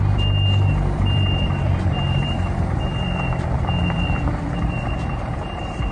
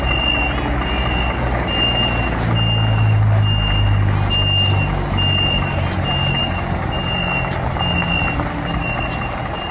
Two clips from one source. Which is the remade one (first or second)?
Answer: first